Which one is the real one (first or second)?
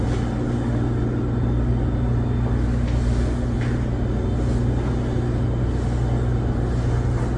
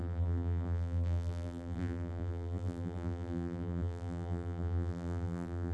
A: first